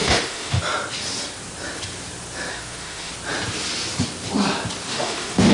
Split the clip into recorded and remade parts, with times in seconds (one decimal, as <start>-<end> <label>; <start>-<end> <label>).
0.0-0.6 remade; 0.6-2.5 recorded; 2.5-3.1 remade; 3.1-4.9 recorded; 4.9-5.5 remade